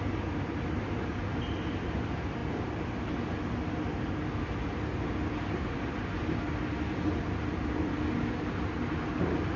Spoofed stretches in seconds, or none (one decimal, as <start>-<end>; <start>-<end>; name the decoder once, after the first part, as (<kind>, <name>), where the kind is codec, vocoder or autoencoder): none